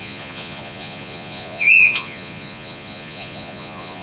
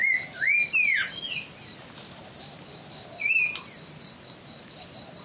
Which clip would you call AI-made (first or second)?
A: first